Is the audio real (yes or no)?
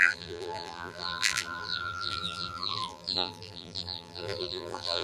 no